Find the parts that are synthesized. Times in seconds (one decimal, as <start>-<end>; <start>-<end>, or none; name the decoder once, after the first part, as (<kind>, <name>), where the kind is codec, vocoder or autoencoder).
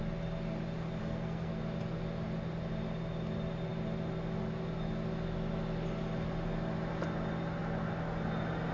1.0-1.6 (codec, SNAC)